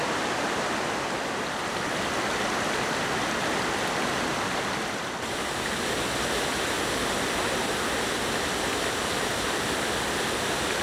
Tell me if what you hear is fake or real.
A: real